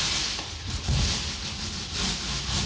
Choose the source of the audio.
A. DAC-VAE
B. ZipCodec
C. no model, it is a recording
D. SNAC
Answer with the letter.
C